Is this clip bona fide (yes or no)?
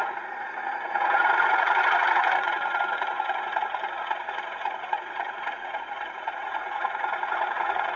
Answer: no